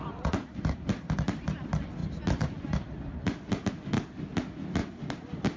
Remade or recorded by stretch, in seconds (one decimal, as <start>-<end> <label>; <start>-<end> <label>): 0.0-5.6 recorded